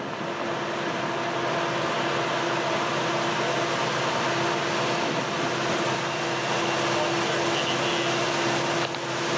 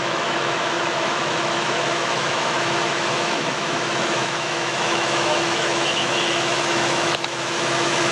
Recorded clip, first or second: first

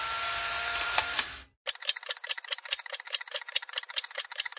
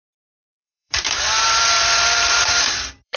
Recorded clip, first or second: first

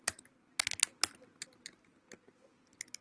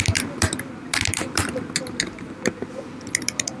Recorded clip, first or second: first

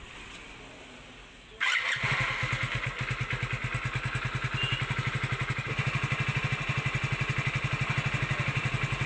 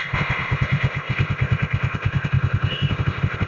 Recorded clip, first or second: first